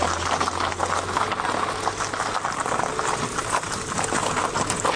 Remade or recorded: recorded